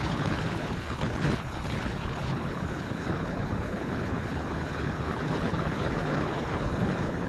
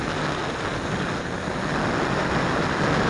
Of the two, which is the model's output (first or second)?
first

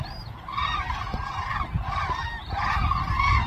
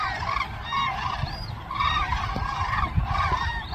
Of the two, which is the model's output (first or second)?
second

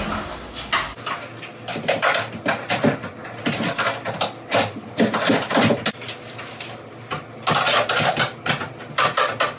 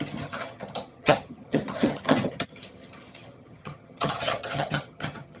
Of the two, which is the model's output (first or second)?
second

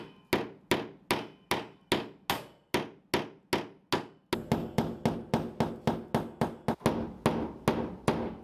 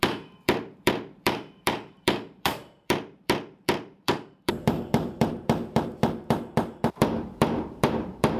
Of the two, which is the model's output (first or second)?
second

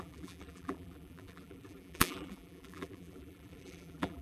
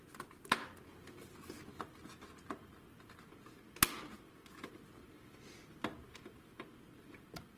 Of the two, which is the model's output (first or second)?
first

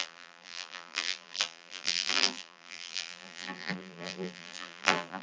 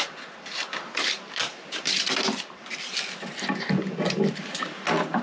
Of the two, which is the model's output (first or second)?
first